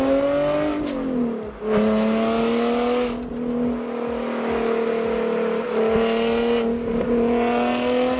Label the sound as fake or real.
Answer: real